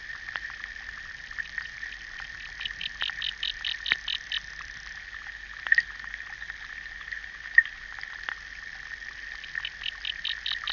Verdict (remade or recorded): recorded